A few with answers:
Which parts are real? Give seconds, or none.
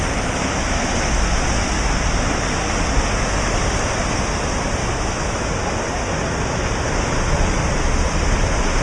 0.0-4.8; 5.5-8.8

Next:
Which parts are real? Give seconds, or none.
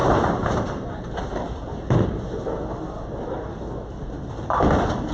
0.0-5.1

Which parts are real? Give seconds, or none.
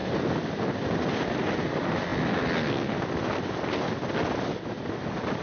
0.0-5.4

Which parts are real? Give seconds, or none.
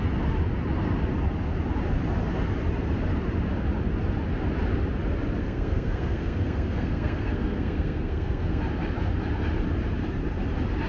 0.0-5.4; 8.6-10.9